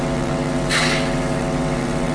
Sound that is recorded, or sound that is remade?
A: remade